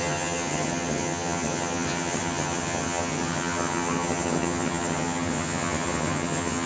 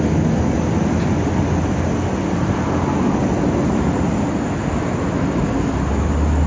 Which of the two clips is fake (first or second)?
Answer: first